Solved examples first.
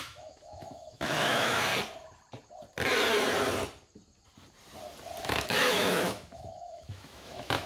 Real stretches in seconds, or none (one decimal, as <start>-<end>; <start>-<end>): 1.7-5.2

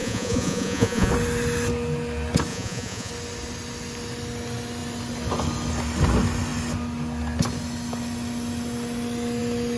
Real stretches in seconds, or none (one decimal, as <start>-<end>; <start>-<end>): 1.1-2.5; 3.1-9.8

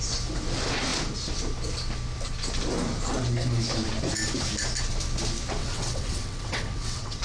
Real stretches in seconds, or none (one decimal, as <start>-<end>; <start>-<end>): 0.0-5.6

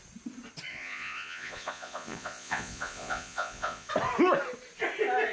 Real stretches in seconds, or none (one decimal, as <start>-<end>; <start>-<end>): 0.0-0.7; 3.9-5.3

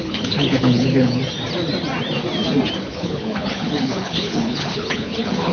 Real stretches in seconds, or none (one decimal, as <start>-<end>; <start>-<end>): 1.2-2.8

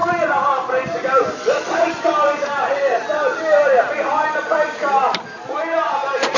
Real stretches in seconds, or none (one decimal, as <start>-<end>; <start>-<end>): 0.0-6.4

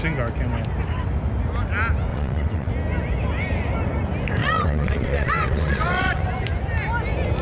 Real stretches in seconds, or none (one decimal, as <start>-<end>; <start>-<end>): 0.0-2.1; 2.7-4.4; 6.2-7.4

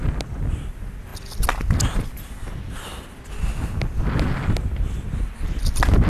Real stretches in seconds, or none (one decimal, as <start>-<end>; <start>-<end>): 0.0-6.1